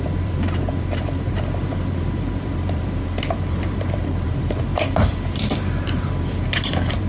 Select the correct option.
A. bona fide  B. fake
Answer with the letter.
B